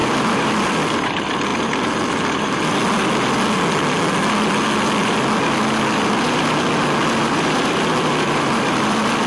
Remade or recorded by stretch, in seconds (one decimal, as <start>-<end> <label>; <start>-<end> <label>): 0.0-2.8 remade; 2.8-7.2 recorded; 7.2-9.3 remade

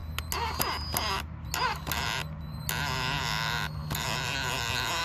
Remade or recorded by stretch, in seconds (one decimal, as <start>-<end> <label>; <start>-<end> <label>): 0.0-5.0 recorded

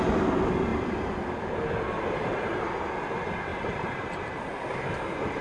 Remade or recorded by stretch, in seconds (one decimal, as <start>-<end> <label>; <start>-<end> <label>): 0.0-0.7 recorded; 0.7-2.6 remade; 2.6-3.5 recorded; 3.5-4.4 remade; 4.4-5.4 recorded

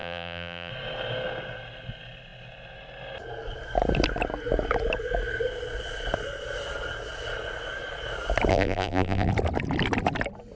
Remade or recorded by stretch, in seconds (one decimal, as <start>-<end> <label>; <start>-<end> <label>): 0.0-0.7 remade; 0.7-8.5 recorded; 8.5-9.3 remade; 9.3-10.6 recorded

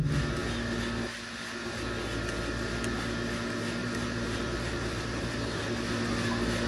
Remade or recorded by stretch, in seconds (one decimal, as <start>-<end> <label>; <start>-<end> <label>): 0.0-3.8 recorded; 3.8-5.6 remade; 5.6-6.7 recorded

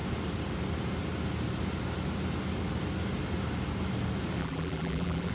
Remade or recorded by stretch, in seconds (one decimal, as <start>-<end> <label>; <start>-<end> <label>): 0.0-4.4 recorded; 4.4-5.3 remade